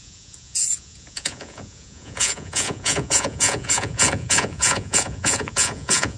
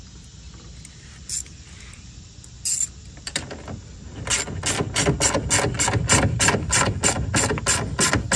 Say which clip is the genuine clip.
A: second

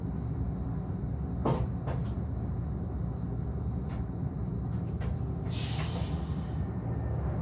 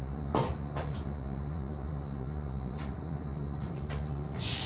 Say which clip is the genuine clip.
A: first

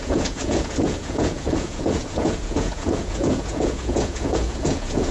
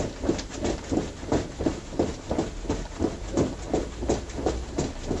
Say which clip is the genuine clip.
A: second